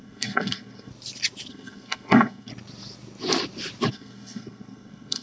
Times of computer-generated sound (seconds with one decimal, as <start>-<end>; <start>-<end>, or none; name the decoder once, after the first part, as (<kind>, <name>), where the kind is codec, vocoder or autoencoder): 0.0-0.9 (codec, SNAC); 1.5-2.5; 3.9-5.2